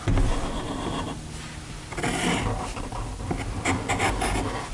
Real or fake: real